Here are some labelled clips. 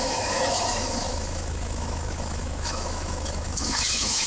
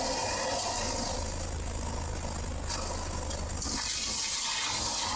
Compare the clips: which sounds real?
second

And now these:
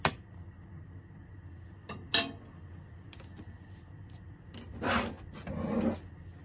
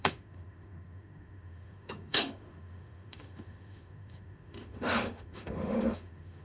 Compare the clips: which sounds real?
first